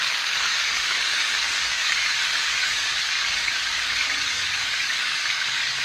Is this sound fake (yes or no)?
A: yes